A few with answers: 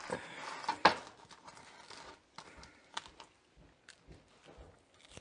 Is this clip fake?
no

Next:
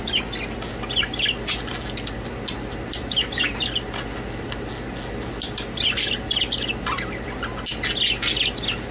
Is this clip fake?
no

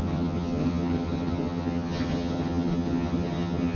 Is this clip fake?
yes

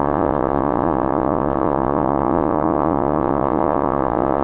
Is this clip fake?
yes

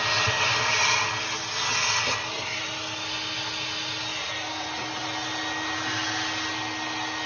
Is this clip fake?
no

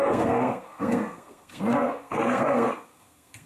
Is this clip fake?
yes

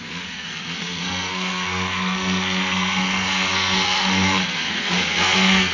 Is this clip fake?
yes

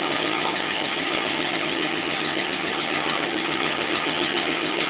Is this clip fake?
yes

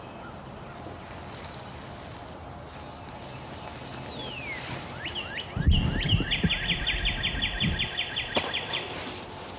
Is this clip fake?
no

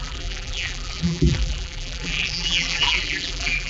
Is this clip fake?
yes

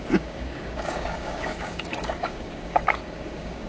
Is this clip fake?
yes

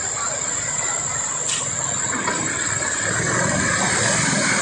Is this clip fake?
no